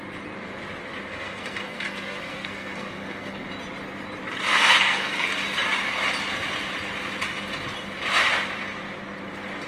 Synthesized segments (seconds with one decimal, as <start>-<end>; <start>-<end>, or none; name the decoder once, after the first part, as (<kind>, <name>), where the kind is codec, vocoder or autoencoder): 1.1-3.5 (codec, SNAC); 4.5-5.4